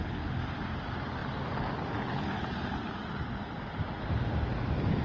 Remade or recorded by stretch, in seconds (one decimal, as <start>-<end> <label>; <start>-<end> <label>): 0.0-5.0 recorded